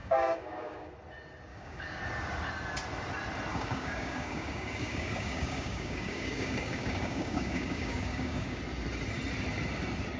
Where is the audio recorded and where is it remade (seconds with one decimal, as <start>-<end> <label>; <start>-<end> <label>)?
0.0-0.9 remade; 0.9-1.5 recorded; 1.5-2.0 remade; 2.0-3.5 recorded; 3.5-8.6 remade; 8.6-10.2 recorded